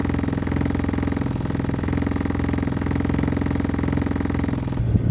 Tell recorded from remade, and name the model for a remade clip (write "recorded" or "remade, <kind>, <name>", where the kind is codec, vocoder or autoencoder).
recorded